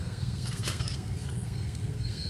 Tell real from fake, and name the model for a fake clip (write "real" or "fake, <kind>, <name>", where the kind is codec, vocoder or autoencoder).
fake, codec, SNAC